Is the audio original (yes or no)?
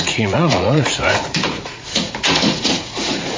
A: no